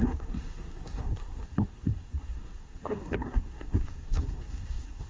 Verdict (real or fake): fake